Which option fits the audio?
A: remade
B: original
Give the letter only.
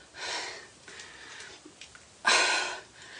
B